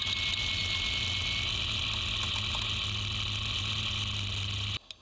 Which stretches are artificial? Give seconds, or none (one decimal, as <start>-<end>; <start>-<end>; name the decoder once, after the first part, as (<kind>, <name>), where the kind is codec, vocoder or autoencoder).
none